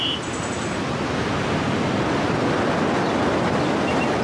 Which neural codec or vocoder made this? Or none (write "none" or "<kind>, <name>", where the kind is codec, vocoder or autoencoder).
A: none